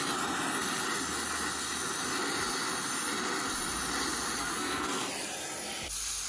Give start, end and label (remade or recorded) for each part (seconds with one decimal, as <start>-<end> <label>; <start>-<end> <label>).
0.0-4.4 recorded; 4.4-5.1 remade; 5.1-6.3 recorded

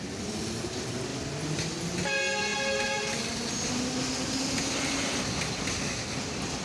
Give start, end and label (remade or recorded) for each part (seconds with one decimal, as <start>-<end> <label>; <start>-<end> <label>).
0.0-6.6 recorded

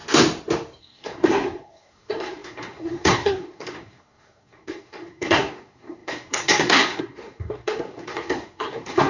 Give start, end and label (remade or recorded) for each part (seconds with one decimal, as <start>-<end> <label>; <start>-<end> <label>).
0.0-0.8 recorded; 0.8-9.1 remade

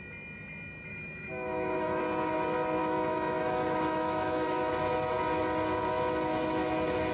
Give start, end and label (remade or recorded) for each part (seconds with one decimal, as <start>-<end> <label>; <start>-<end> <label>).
0.0-0.9 recorded; 0.9-2.0 remade; 2.0-2.8 recorded; 2.8-4.7 remade; 4.7-7.1 recorded

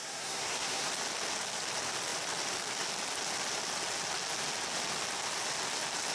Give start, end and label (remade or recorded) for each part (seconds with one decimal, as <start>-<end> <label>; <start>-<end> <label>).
0.0-0.9 remade; 0.9-6.1 recorded

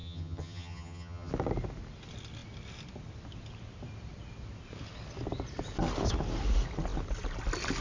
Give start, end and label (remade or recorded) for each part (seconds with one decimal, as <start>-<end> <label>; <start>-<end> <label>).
0.0-1.3 remade; 1.3-7.8 recorded